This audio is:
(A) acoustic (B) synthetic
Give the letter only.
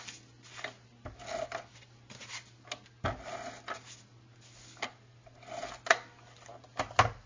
A